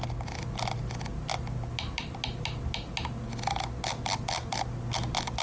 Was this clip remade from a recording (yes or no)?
no